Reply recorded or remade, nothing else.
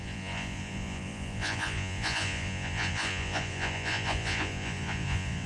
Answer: remade